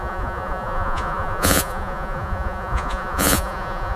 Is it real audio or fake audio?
fake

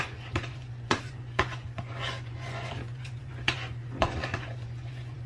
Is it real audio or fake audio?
fake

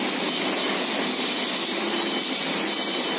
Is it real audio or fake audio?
real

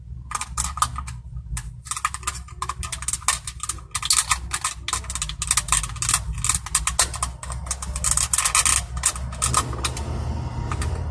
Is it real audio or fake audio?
real